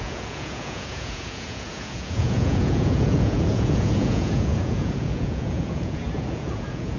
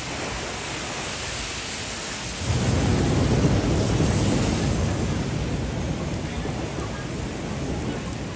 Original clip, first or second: second